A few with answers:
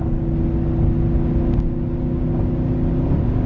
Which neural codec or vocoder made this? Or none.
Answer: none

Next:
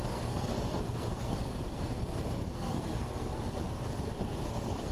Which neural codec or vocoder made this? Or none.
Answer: codec, SNAC